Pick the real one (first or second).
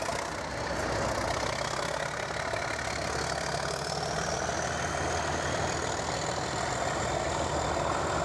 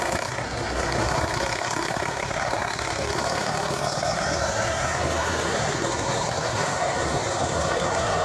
first